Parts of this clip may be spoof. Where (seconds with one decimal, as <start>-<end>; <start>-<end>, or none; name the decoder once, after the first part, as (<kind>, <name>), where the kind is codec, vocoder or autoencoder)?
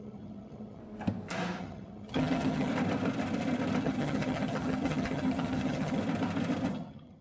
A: 0.0-0.8 (vocoder, HiFi-GAN); 1.6-2.7; 3.8-6.0; 6.7-7.2